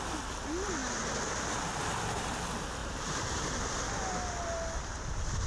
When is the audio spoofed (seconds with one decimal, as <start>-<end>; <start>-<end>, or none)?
2.8-4.1